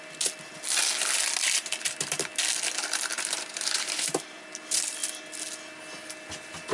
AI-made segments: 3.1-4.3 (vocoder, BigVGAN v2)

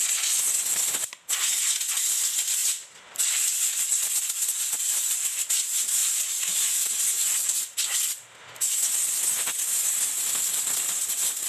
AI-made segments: 2.6-4.1 (vocoder, BigVGAN v2); 6.0-6.7

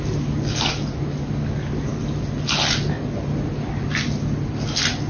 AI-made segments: none